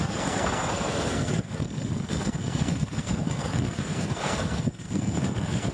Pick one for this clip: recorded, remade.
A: remade